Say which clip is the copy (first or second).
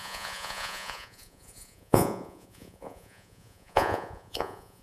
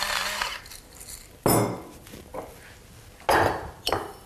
first